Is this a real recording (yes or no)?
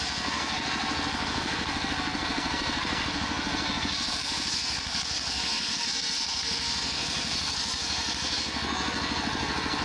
no